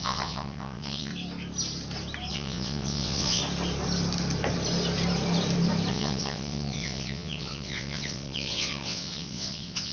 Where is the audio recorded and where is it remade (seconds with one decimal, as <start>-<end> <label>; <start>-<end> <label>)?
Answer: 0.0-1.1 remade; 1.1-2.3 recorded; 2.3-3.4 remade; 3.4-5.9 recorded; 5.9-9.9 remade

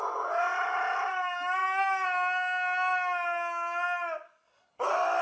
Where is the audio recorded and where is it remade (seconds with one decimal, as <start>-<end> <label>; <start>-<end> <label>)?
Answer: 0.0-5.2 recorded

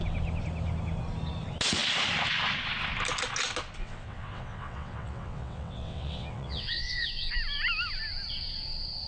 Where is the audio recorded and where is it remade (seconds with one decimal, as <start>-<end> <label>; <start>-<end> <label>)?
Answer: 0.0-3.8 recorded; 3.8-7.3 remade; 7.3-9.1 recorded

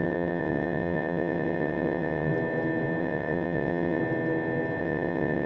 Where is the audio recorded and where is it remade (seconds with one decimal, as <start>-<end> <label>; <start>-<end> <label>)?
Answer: 0.0-2.3 remade; 2.3-3.0 recorded; 3.0-4.0 remade; 4.0-4.8 recorded; 4.8-5.5 remade

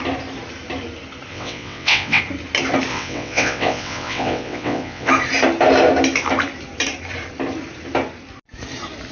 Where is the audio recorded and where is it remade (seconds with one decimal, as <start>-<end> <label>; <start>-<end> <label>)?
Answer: 0.0-1.3 recorded; 1.3-2.2 remade; 2.2-2.9 recorded; 2.9-5.1 remade; 5.1-9.1 recorded